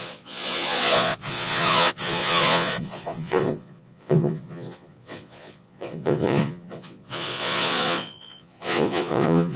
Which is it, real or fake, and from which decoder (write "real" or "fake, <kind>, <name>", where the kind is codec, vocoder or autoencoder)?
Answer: fake, vocoder, Vocos